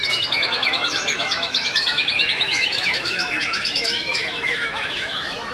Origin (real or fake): fake